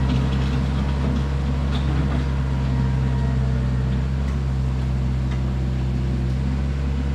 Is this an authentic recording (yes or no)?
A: yes